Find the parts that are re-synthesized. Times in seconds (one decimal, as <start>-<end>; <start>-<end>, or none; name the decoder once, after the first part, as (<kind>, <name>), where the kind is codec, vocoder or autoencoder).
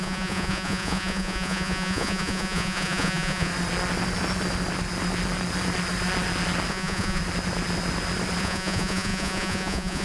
0.0-3.5 (vocoder, Vocos); 6.7-7.2; 8.4-10.0